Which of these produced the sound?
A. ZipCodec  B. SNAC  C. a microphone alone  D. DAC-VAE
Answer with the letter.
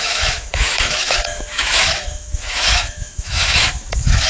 D